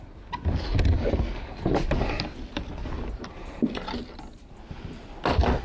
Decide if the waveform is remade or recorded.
recorded